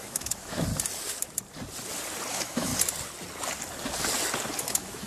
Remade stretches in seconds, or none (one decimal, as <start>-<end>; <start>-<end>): 0.0-0.7; 2.3-2.7; 4.6-5.1